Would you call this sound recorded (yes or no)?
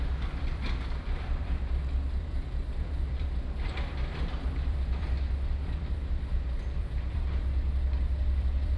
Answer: no